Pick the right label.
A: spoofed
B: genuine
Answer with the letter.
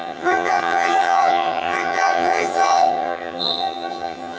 A